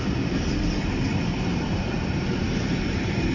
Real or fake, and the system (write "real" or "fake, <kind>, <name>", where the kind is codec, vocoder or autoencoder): real